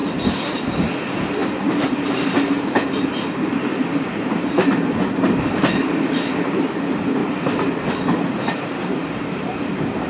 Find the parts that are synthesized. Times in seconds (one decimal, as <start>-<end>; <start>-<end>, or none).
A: 0.0-10.1